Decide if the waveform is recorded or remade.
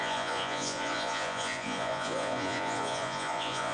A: remade